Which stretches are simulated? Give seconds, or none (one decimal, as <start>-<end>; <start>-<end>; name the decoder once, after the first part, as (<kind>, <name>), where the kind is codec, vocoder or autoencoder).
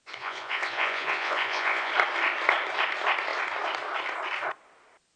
0.0-1.9 (vocoder, Vocos)